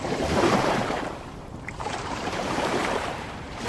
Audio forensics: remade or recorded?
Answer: remade